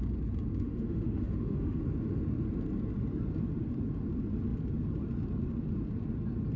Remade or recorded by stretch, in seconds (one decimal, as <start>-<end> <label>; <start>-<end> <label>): 0.0-0.5 recorded; 0.5-1.8 remade; 1.8-6.6 recorded